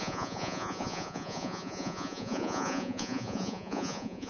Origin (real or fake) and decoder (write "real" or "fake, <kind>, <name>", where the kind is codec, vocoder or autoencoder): fake, vocoder, Vocos